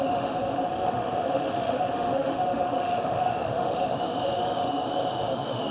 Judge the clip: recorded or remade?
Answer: remade